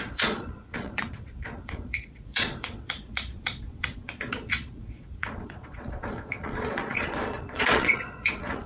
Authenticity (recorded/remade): remade